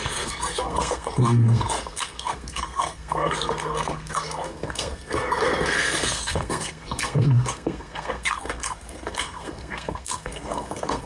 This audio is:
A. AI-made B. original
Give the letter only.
A